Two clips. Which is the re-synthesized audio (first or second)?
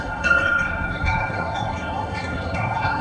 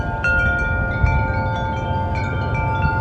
first